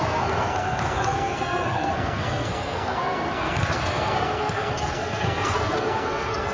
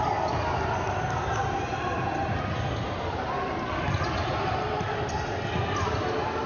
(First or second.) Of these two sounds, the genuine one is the second